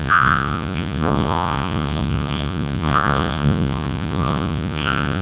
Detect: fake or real fake